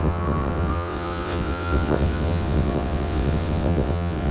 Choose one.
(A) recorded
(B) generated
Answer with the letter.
B